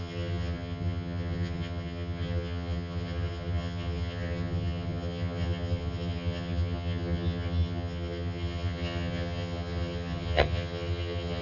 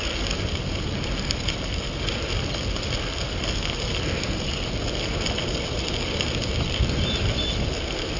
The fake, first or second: first